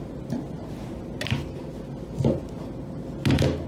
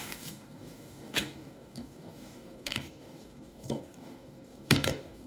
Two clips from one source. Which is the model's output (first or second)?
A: second